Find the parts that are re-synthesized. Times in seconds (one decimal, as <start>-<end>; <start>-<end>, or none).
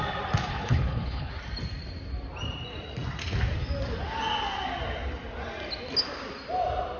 0.5-1.3